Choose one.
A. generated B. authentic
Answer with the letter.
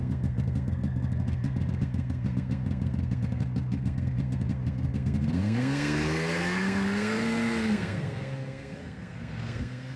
A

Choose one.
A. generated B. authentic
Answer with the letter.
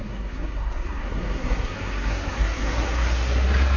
A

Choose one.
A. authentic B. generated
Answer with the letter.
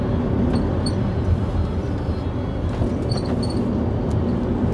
A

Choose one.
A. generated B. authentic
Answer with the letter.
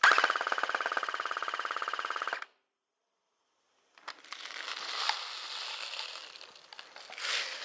B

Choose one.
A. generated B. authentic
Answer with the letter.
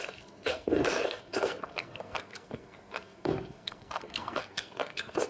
A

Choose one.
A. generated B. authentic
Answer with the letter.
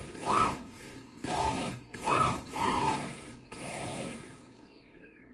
A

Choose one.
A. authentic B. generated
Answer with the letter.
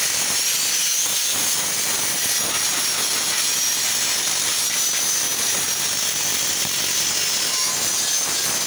A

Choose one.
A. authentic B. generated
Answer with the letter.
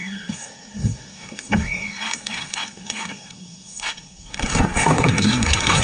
B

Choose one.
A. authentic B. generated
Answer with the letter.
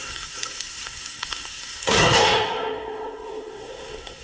B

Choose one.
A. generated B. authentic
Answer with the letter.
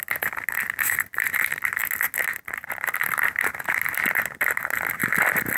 B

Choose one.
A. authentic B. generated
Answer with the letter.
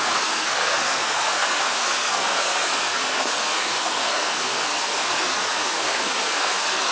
B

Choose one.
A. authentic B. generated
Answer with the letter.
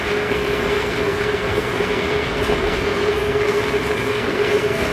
B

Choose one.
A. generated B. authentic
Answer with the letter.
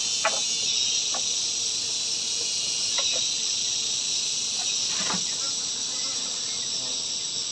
B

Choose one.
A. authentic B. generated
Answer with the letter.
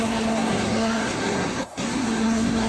B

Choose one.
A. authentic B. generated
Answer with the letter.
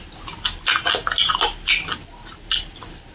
A